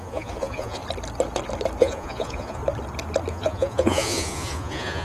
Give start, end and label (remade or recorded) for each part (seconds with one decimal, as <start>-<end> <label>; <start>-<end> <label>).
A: 0.0-0.8 remade; 0.8-1.8 recorded; 1.8-2.6 remade; 2.6-3.3 recorded; 3.3-5.0 remade